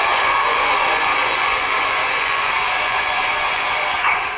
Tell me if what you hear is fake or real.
fake